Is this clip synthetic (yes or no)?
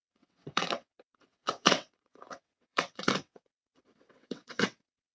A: yes